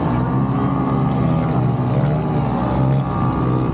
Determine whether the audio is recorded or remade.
recorded